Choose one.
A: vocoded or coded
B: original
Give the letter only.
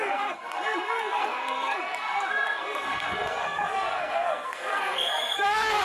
A